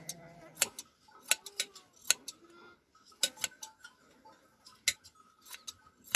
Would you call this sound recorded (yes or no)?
yes